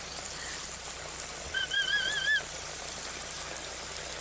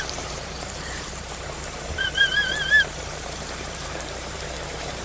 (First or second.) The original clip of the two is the first